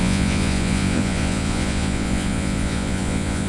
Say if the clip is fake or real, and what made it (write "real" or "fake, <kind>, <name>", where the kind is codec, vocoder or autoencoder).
fake, vocoder, Vocos